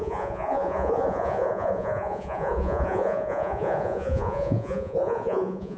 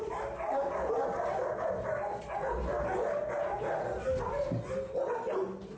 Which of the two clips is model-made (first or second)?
first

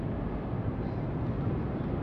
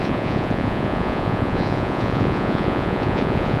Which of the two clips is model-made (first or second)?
second